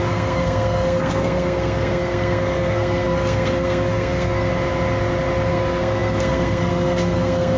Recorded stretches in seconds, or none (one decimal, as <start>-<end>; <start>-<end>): 4.5-5.5